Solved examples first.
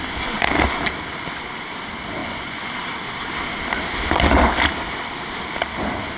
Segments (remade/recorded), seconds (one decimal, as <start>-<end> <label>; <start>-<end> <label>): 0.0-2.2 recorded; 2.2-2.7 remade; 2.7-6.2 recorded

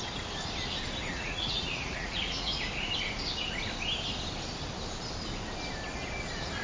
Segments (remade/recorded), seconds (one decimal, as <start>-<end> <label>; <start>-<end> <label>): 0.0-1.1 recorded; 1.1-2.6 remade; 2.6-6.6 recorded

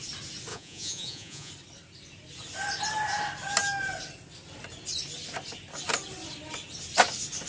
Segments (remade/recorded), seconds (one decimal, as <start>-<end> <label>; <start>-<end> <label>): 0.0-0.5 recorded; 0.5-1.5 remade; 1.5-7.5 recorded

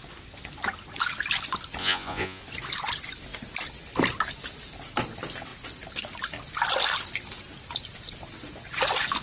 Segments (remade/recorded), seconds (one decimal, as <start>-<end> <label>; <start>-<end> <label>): 0.0-1.8 recorded; 1.8-2.4 remade; 2.4-9.2 recorded

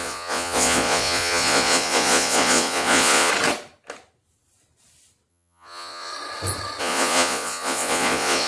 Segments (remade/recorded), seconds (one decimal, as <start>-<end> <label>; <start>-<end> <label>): 0.0-3.3 remade; 3.3-5.3 recorded; 5.3-6.1 remade; 6.1-6.8 recorded; 6.8-8.5 remade

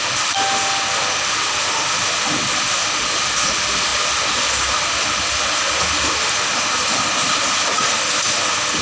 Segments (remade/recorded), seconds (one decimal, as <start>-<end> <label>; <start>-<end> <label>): 0.0-8.8 recorded

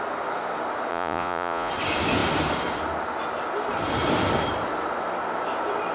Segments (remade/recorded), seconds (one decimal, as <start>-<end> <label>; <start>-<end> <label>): 0.0-0.9 recorded; 0.9-1.7 remade; 1.7-5.9 recorded

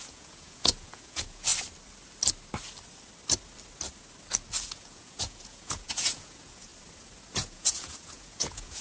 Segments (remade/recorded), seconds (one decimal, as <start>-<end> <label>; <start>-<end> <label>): 0.0-1.5 remade; 1.5-4.6 recorded; 4.6-6.7 remade; 6.7-7.3 recorded; 7.3-8.8 remade